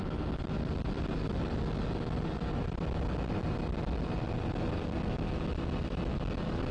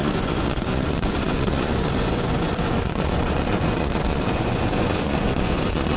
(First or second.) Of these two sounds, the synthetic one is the second